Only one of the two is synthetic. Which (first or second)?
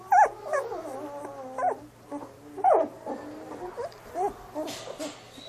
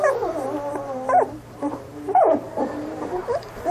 second